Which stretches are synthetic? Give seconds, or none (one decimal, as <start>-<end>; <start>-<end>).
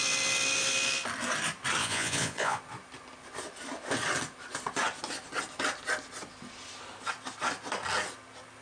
1.8-2.6